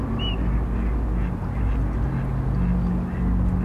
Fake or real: real